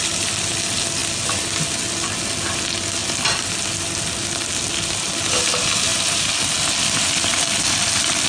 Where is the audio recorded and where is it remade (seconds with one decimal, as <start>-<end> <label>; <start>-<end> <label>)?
0.0-8.3 recorded